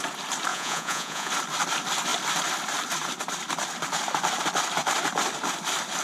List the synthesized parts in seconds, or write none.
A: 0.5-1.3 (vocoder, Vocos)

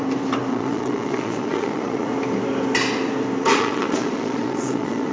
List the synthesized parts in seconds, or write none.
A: 0.5-2.1 (vocoder, Vocos); 3.5-5.1

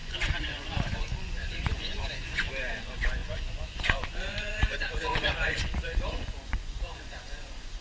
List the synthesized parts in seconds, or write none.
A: 0.0-2.5 (vocoder, Vocos); 3.2-7.8

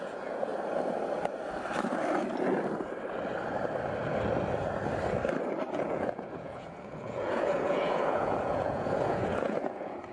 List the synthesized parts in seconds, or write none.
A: 0.0-0.5 (vocoder, Vocos); 5.7-10.1

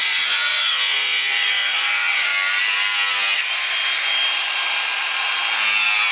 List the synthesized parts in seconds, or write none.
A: 0.0-2.3 (vocoder, Vocos)